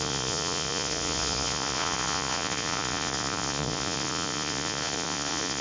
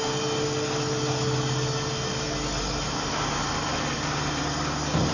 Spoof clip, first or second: first